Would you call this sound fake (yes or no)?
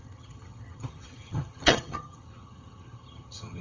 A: yes